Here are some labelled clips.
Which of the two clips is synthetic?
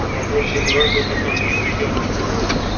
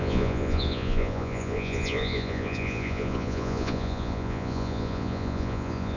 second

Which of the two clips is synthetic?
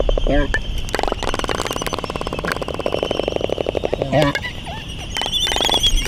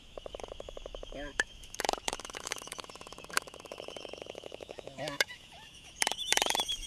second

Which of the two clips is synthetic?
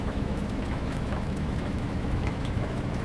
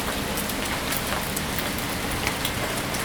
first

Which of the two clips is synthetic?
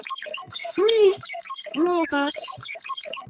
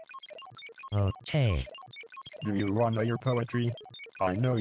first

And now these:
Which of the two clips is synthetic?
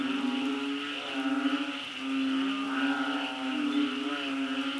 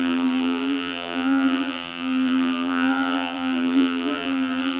second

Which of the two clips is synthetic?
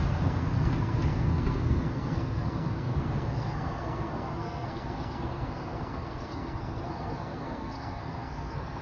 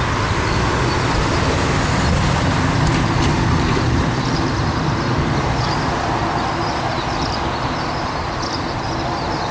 first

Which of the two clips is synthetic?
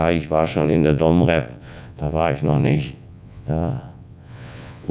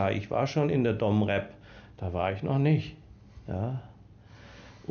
first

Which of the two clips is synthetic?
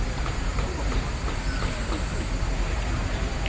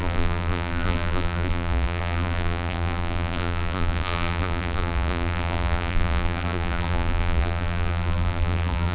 second